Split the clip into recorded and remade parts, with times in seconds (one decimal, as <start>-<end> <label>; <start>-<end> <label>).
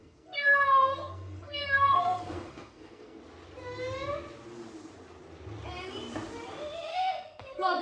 0.0-3.2 remade; 3.2-6.9 recorded; 6.9-7.8 remade